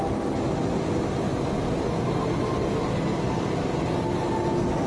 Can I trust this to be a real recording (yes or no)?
yes